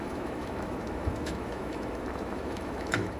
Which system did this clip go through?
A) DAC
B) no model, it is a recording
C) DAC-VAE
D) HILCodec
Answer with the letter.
C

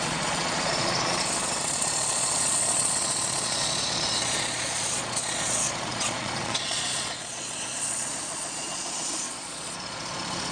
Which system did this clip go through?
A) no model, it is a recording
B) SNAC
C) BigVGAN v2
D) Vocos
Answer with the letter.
D